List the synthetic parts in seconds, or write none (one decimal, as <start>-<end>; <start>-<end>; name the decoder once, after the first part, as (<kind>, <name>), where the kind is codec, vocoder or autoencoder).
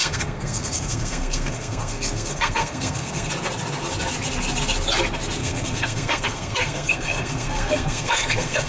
0.0-3.3 (codec, SNAC); 5.4-8.7